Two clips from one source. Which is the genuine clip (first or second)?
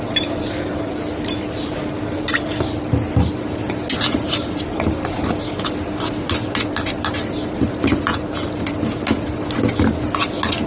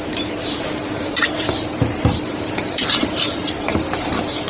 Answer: first